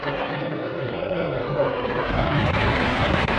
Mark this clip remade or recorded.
remade